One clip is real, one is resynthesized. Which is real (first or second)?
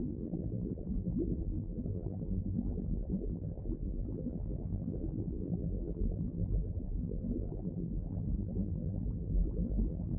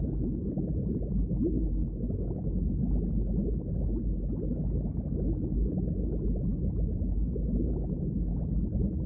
second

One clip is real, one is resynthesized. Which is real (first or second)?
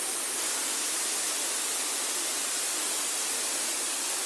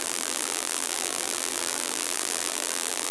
first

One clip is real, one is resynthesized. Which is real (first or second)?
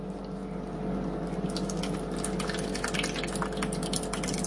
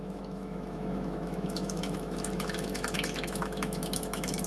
first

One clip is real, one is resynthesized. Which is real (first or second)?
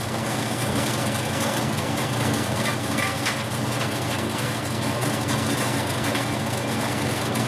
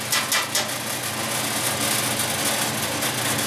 second